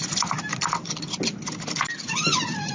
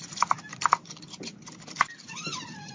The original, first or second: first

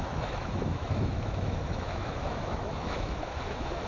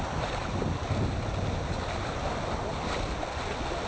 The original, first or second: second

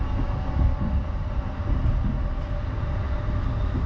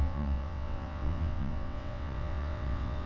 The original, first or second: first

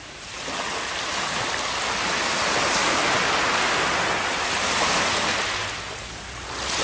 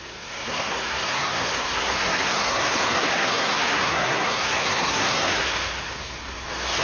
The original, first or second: first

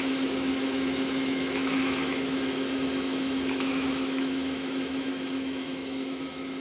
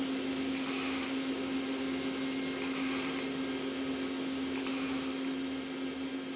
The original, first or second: second